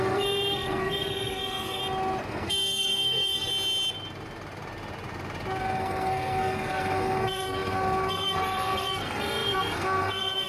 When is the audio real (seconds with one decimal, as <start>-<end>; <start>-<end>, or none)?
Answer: 1.8-2.3; 3.5-5.6